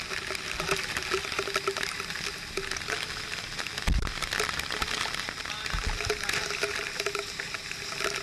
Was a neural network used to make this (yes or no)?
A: no